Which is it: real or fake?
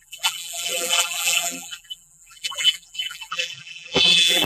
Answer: fake